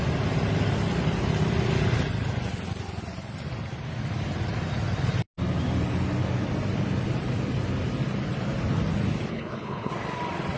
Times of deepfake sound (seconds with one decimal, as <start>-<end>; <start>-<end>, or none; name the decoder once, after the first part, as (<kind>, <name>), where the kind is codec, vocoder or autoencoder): 9.3-9.9 (codec, HILCodec)